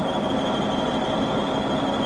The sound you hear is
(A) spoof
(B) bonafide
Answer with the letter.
B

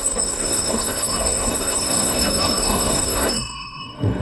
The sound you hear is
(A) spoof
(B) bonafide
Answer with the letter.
A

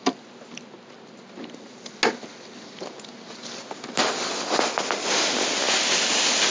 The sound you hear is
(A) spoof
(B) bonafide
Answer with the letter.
B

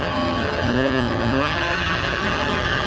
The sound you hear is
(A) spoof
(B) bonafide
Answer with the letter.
A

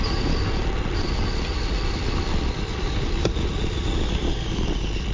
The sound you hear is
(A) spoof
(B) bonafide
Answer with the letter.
B